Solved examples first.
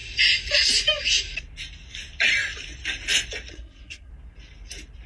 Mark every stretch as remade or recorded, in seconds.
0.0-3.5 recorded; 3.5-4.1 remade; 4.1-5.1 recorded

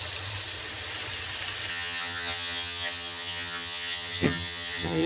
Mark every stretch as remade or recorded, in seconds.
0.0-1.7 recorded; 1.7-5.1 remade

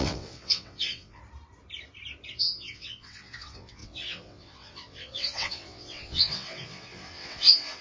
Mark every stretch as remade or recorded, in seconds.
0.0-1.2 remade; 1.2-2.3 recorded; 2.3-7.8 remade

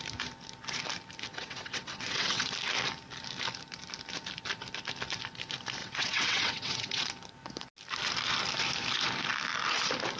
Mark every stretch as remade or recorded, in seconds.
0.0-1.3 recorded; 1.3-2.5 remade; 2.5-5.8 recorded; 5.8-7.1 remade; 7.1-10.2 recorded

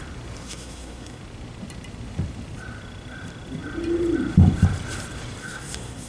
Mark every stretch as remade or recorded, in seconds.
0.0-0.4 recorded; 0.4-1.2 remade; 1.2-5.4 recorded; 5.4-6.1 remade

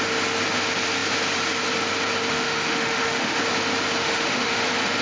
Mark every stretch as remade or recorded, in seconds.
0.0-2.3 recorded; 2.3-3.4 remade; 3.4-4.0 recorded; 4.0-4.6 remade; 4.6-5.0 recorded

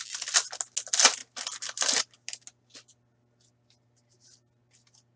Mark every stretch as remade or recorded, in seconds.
0.0-5.2 recorded

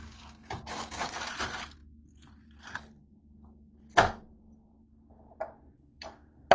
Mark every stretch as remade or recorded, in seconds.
0.0-1.1 remade; 1.1-6.5 recorded